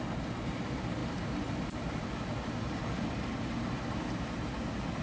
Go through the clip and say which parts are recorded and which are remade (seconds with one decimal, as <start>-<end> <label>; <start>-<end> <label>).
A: 0.0-5.0 recorded